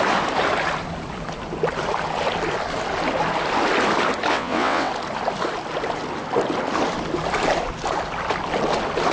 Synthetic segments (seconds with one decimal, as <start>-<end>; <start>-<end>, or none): 4.3-4.9